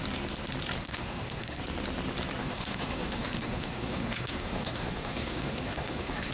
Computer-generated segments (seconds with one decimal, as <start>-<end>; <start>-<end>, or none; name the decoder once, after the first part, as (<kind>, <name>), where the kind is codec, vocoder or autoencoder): 0.8-1.6 (codec, SNAC); 2.4-6.3